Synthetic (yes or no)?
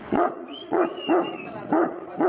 yes